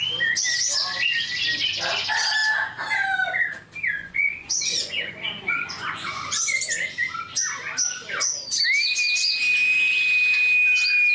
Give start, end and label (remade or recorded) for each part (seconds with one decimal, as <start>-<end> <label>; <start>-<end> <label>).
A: 0.0-4.0 recorded; 4.0-6.6 remade; 6.6-11.1 recorded